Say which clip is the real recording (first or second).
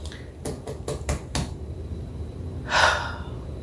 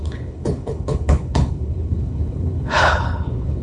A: first